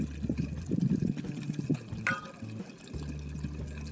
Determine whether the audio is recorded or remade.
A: recorded